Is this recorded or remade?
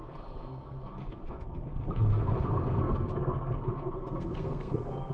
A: remade